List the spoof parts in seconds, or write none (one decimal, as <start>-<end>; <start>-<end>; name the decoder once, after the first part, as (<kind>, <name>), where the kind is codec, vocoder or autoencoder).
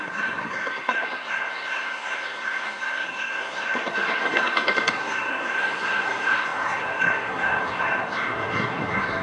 0.0-9.2 (codec, SNAC)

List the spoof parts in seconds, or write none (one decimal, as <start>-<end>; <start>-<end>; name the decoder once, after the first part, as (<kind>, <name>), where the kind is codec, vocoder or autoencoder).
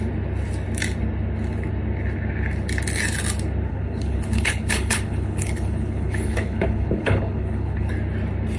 3.7-7.9 (codec, HILCodec)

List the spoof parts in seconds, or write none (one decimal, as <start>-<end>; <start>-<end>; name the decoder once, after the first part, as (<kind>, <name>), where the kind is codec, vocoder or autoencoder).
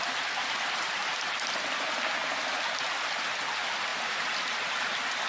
3.9-4.4 (vocoder, BigVGAN v2)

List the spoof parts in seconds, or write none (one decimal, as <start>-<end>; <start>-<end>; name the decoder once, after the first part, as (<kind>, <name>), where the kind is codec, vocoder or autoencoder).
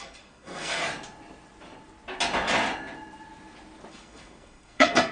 0.0-0.8 (codec, SNAC); 3.9-5.1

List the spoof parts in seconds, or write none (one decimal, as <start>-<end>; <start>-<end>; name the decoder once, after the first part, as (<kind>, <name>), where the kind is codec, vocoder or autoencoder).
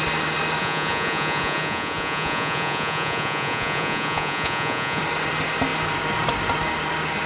0.6-5.0 (vocoder, Vocos)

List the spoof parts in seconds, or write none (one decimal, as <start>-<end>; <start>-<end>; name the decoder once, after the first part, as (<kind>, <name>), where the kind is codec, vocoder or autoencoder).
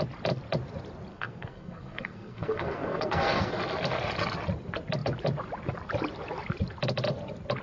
1.1-3.5 (codec, SNAC)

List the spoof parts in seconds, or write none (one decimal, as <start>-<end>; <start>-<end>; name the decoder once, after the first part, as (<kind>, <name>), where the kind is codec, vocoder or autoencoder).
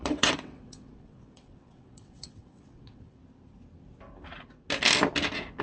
0.0-3.2 (vocoder, WaveNeXt)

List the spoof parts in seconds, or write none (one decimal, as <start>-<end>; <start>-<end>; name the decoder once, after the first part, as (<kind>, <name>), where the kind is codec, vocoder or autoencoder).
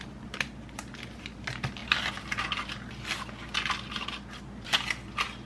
none